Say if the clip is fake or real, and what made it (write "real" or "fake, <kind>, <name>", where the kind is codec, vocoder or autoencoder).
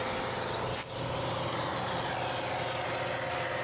real